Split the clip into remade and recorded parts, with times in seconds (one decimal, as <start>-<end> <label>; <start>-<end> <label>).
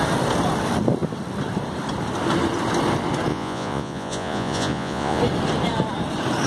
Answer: 0.0-3.3 recorded; 3.3-5.2 remade; 5.2-6.5 recorded